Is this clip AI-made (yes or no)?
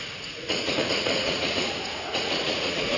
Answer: yes